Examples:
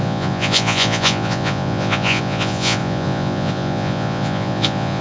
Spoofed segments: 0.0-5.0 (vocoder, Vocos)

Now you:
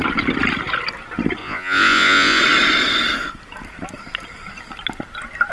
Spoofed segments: 1.4-2.4 (vocoder, Vocos)